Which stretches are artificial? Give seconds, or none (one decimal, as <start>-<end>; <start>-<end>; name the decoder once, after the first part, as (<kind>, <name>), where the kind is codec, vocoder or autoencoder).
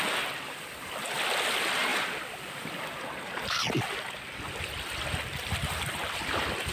none